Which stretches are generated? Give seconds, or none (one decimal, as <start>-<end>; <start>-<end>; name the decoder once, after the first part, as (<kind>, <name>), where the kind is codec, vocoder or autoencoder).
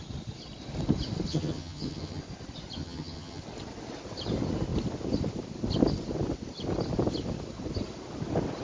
1.3-2.2 (vocoder, HiFi-GAN); 2.8-3.4